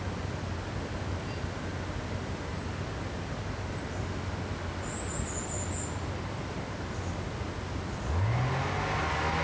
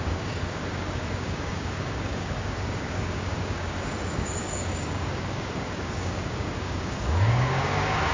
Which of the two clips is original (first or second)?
first